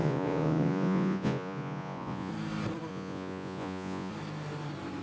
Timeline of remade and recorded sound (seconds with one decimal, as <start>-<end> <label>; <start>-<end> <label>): 0.0-2.3 remade; 2.3-2.9 recorded; 2.9-4.1 remade; 4.1-5.0 recorded